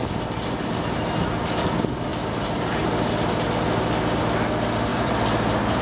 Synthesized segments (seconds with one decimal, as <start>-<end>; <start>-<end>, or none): 2.1-3.1; 4.9-5.8